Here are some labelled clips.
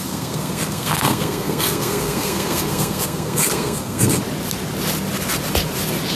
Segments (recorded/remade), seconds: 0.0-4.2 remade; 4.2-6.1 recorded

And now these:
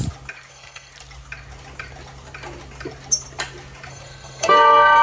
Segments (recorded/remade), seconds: 0.0-0.5 recorded; 0.5-0.9 remade; 0.9-3.9 recorded; 3.9-5.0 remade